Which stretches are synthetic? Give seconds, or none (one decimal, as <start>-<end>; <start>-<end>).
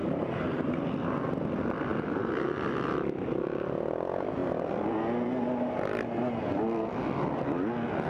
0.0-0.7; 1.9-2.7